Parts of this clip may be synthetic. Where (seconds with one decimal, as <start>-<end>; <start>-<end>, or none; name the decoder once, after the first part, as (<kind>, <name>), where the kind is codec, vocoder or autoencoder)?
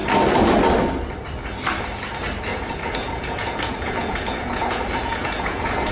2.5-5.9 (vocoder, Vocos)